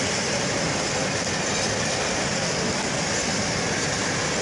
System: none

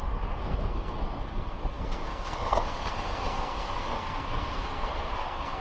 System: codec, SNAC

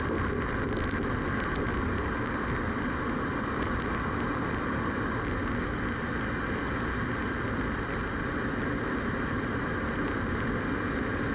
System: none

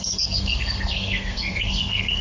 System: codec, SNAC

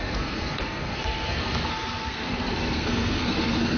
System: codec, SNAC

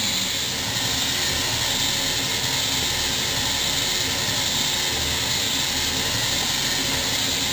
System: none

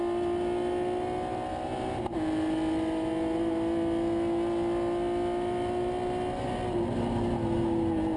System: none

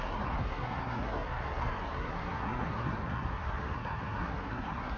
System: codec, SNAC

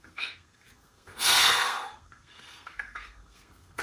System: codec, SNAC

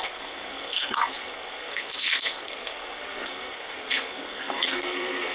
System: codec, SNAC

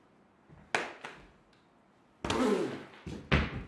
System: none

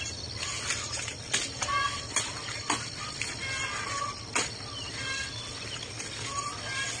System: none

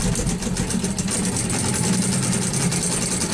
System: none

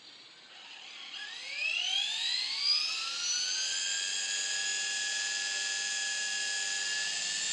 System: none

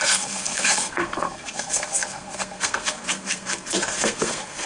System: codec, SNAC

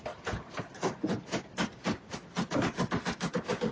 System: none